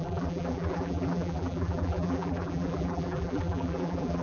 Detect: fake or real fake